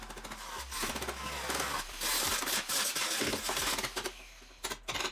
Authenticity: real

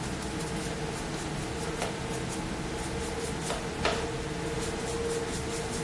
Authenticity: real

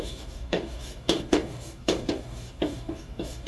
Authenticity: fake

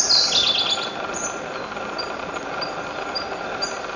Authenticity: real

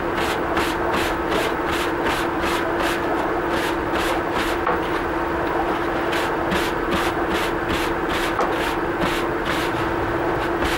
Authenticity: fake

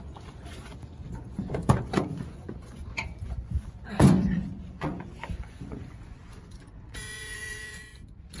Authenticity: fake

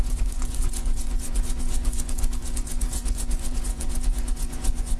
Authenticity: fake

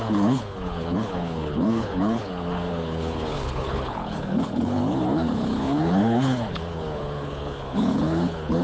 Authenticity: fake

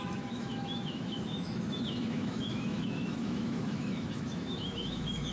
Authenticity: fake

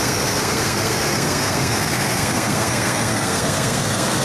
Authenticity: fake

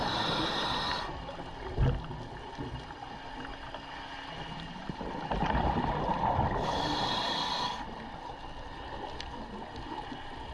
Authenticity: real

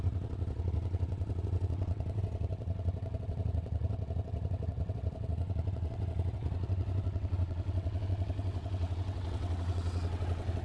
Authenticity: fake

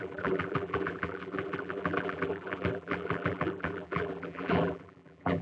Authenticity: fake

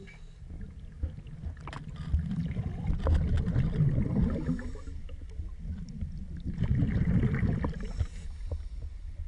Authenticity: real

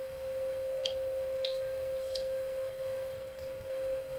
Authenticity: fake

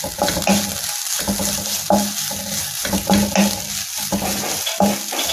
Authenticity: real